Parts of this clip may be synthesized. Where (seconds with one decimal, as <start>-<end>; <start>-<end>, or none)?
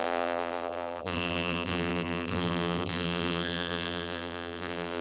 0.0-5.0